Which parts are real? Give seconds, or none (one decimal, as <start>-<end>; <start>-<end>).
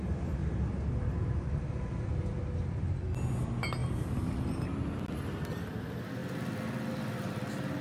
0.0-0.4; 2.1-3.8; 4.6-6.2